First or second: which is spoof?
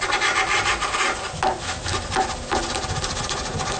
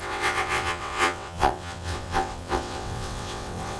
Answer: second